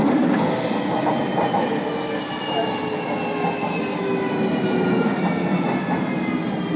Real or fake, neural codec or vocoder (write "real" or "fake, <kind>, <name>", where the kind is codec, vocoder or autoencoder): real